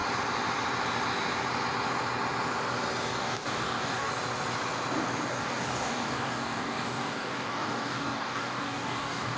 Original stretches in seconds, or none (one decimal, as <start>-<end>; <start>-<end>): 0.0-3.1; 4.1-5.3